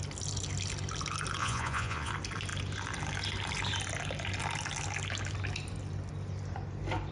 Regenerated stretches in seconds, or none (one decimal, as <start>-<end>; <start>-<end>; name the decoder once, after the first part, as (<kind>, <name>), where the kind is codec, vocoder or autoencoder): 1.4-2.1 (vocoder, Vocos)